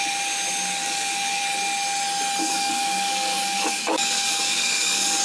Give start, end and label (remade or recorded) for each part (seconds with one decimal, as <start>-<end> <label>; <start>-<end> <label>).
0.0-0.8 recorded; 0.8-1.4 remade; 1.4-2.4 recorded; 2.4-5.2 remade